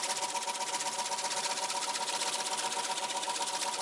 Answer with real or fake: real